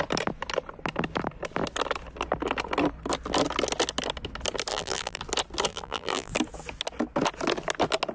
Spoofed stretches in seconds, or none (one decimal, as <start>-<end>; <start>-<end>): 4.7-5.2; 5.7-6.3